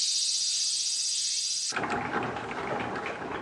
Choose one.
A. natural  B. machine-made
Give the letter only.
A